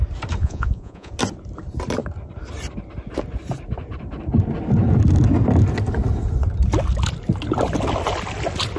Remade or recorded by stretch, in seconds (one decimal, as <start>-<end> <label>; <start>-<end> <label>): 0.0-0.4 recorded; 0.4-1.1 remade; 1.1-8.8 recorded